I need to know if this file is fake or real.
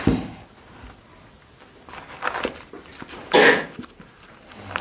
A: real